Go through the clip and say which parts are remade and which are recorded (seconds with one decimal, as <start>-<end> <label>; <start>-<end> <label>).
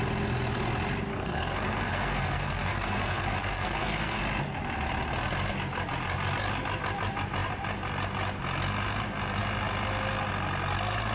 0.0-1.1 recorded; 1.1-4.2 remade; 4.2-11.1 recorded